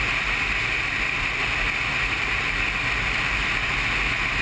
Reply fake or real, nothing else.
real